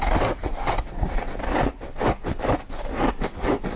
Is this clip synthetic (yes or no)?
no